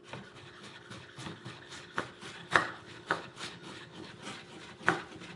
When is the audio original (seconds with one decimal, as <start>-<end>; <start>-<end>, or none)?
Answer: 0.0-0.4; 2.0-2.4; 4.1-5.4